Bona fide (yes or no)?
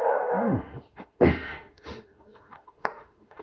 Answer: no